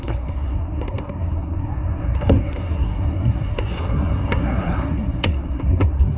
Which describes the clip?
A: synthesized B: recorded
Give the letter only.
A